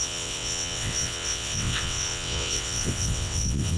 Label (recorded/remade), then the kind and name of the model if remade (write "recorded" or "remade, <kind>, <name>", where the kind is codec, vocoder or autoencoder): remade, vocoder, WaveNeXt